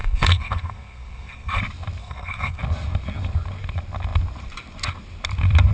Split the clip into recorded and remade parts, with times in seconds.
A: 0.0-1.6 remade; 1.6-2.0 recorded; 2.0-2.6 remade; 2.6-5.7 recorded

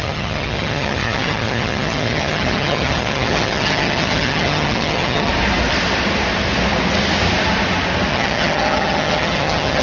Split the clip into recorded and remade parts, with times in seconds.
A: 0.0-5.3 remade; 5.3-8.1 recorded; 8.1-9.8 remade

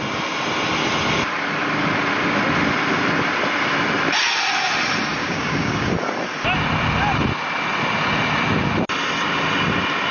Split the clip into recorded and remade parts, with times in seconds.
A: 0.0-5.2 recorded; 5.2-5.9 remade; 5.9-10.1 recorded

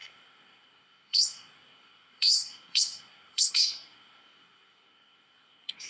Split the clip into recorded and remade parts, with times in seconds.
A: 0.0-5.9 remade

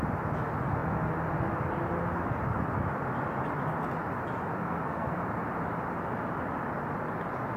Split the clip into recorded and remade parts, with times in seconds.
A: 0.0-4.6 recorded; 4.6-5.2 remade; 5.2-7.6 recorded